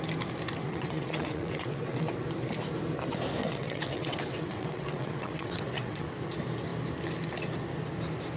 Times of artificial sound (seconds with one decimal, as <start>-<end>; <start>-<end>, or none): 0.6-2.1; 3.4-6.1